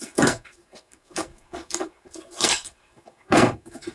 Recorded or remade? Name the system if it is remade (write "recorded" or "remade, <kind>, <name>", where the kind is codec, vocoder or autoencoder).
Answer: remade, codec, SNAC